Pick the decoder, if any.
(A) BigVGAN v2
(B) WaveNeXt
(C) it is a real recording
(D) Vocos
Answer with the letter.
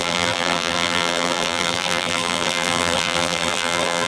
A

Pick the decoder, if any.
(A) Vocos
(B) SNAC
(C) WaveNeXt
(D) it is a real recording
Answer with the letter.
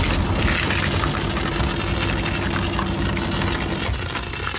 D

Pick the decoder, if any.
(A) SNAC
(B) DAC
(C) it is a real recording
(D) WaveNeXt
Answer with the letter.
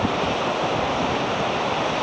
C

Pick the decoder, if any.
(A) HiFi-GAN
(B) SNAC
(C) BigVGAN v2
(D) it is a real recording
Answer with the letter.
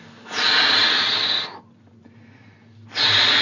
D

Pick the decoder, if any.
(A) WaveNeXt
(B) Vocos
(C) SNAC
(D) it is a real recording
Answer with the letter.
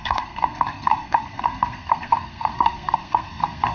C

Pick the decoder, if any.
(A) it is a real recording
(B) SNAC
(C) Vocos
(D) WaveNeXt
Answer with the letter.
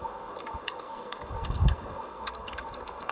B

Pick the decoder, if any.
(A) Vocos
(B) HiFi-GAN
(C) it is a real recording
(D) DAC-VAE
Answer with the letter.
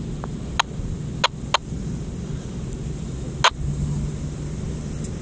C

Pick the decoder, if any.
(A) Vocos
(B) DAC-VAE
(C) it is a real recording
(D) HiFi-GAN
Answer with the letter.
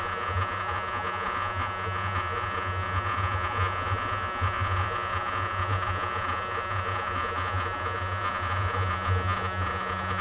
A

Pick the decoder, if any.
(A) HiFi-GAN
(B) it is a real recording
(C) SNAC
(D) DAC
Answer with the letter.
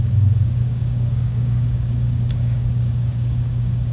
D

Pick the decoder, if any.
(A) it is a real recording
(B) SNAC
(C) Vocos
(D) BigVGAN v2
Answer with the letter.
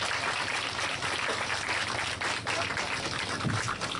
D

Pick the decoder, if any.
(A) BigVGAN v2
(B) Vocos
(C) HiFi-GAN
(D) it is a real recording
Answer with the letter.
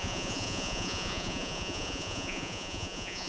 B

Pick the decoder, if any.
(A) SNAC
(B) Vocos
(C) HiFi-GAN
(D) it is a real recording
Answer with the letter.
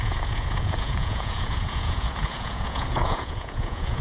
B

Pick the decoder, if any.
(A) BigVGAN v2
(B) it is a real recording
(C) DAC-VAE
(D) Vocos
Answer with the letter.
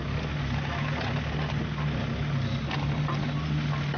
B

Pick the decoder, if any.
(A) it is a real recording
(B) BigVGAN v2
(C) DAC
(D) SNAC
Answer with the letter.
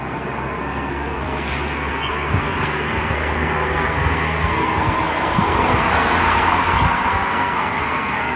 D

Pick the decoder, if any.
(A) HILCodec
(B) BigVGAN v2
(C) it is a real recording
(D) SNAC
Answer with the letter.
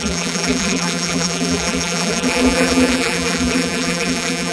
B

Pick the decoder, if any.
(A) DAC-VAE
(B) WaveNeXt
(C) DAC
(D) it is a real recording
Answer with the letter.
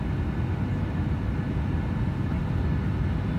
D